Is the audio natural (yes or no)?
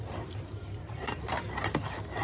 no